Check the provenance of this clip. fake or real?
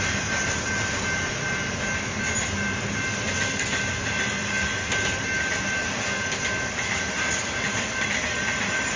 real